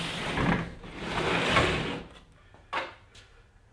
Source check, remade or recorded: recorded